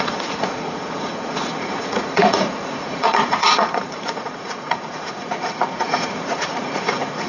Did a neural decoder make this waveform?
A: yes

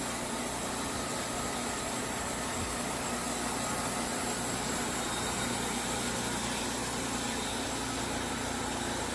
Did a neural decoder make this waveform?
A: no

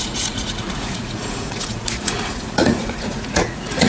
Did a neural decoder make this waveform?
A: yes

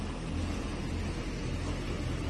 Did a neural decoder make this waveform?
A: no